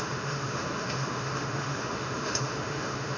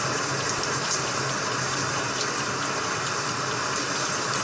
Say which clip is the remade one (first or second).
first